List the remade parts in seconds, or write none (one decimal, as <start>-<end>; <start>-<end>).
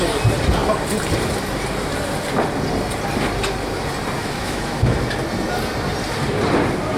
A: 4.2-4.9